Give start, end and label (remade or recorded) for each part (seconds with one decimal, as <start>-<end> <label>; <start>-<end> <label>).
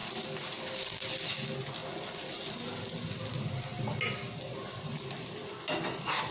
0.0-1.8 recorded; 1.8-2.4 remade; 2.4-6.3 recorded